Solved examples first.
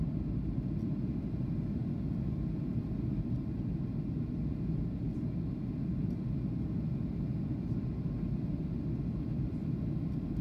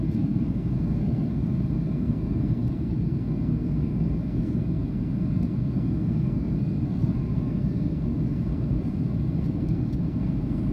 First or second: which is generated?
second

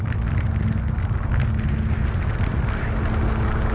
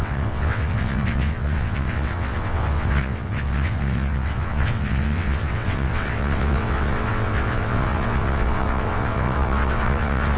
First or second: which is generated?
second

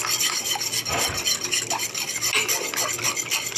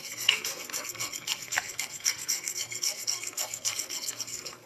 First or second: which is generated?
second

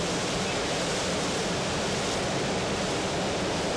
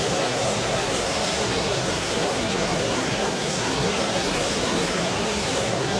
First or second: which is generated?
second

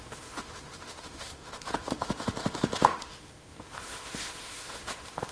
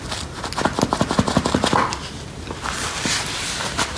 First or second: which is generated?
first